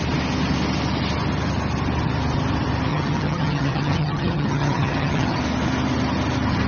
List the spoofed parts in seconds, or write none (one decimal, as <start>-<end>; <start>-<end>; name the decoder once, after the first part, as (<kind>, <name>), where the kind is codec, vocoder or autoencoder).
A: 2.9-5.4 (vocoder, HiFi-GAN)